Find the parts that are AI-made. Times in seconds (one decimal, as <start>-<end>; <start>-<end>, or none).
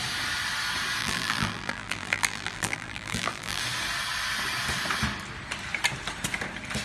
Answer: 1.0-3.6